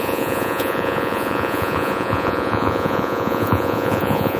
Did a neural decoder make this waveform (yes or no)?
yes